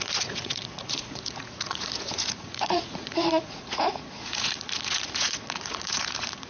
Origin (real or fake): fake